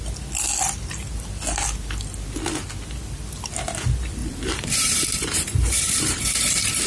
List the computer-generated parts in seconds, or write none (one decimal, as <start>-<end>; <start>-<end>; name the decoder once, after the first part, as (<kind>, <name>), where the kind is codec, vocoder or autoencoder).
4.2-6.9 (vocoder, BigVGAN v2)